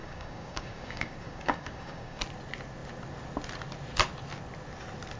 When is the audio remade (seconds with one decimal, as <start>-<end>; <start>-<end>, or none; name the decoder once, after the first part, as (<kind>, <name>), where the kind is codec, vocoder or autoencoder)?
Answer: 0.0-2.2 (codec, DAC)